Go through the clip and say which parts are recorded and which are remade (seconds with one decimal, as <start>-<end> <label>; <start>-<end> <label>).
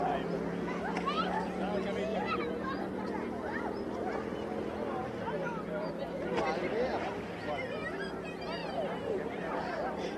0.0-5.0 recorded; 5.0-5.9 remade; 5.9-8.6 recorded; 8.6-10.2 remade